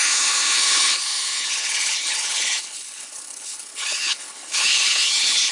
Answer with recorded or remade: remade